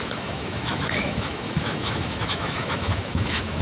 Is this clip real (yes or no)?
no